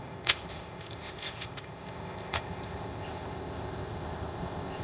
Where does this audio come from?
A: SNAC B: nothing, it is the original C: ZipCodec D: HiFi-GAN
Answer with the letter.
C